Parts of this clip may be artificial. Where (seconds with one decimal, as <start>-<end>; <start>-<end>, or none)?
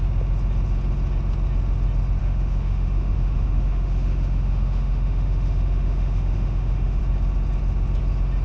2.2-7.0